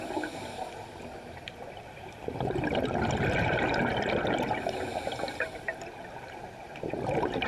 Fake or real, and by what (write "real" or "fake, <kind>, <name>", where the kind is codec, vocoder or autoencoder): real